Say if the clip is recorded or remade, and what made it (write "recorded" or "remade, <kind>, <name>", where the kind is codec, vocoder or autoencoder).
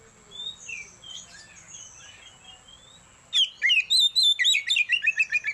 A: recorded